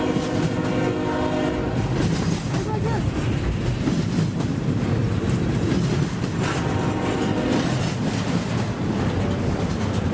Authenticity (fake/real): real